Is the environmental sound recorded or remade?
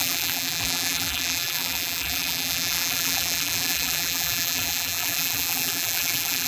remade